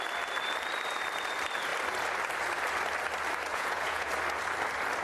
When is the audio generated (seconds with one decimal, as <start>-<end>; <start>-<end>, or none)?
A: 3.5-4.1